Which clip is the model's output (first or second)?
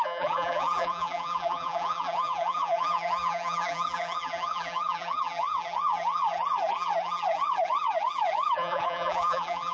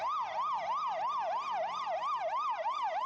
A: first